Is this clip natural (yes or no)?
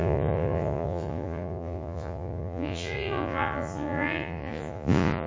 no